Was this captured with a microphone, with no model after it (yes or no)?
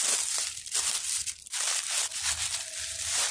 yes